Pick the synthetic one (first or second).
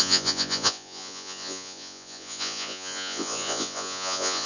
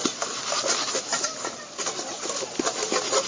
first